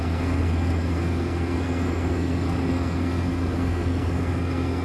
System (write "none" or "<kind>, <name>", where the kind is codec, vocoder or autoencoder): codec, SNAC